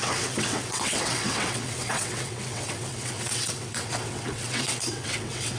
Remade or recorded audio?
remade